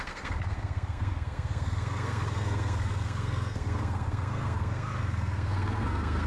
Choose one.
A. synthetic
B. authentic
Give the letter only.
A